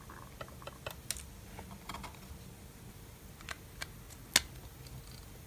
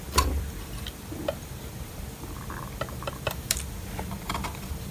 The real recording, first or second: first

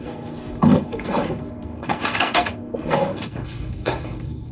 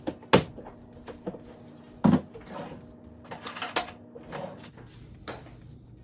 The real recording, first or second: second